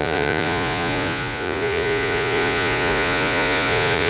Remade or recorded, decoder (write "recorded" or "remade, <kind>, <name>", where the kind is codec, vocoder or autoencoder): remade, vocoder, Vocos